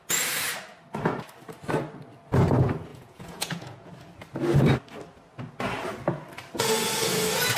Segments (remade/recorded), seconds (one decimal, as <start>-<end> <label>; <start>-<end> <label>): 0.0-2.9 recorded; 2.9-3.9 remade; 3.9-7.6 recorded